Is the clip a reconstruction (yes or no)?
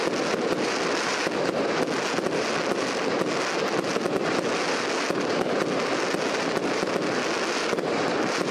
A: no